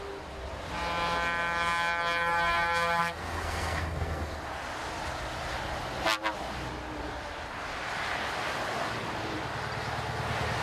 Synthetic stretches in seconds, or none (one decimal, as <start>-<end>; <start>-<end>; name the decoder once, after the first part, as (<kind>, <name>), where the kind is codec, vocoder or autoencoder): 3.0-4.3 (codec, SNAC)

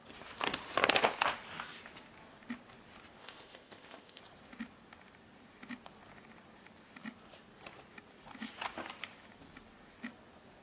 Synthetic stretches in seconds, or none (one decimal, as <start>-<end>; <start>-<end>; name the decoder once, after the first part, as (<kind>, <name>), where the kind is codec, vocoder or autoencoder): 3.2-4.2 (codec, ZipCodec)

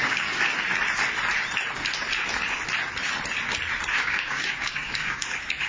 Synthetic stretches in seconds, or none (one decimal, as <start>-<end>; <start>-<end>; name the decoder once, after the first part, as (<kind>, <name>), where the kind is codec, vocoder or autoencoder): 0.0-0.5 (codec, DAC); 3.9-5.7

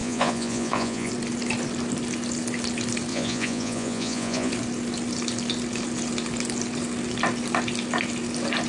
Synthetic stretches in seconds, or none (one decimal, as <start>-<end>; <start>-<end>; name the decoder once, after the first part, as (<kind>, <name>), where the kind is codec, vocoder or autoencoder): 0.0-1.1 (vocoder, Vocos); 3.1-4.5

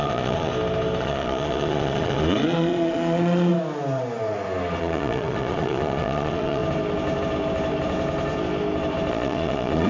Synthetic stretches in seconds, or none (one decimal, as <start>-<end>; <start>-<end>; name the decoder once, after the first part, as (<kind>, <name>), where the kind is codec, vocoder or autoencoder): 0.0-0.5 (vocoder, Vocos); 1.0-3.5; 4.8-6.6; 9.1-9.9

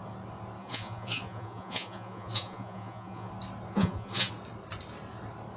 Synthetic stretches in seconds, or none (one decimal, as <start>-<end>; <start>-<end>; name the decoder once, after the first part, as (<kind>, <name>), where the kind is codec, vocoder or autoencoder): 0.6-3.3 (vocoder, Vocos); 3.7-4.3

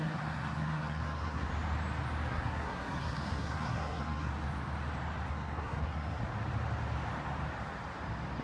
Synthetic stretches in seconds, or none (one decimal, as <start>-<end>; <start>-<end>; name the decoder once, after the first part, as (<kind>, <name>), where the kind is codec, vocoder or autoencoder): 0.0-1.5 (codec, SNAC); 2.3-4.3; 5.3-6.2